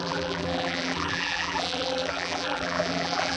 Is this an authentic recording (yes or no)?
no